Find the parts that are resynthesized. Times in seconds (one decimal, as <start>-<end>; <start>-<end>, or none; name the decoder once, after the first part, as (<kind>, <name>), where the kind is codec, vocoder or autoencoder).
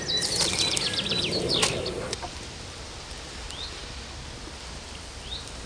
none